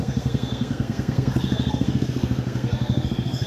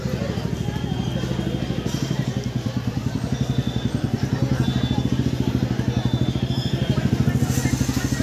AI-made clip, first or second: first